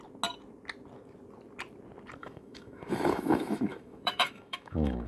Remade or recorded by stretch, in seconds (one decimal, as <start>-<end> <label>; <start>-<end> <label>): 0.0-2.2 recorded; 2.2-5.1 remade